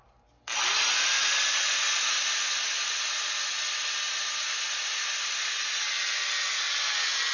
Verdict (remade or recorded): recorded